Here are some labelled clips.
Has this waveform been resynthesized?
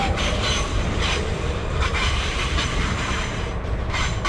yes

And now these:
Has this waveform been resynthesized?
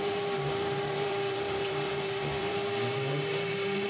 yes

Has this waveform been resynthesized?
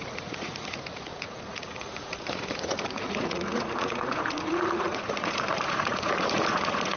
yes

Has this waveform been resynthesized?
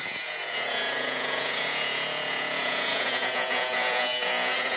yes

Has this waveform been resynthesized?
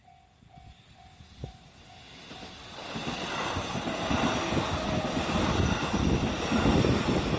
no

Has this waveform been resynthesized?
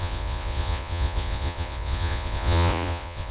yes